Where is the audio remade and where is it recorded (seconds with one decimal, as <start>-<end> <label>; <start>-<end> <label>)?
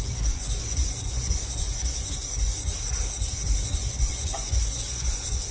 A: 0.0-2.7 remade; 2.7-3.2 recorded; 3.2-5.5 remade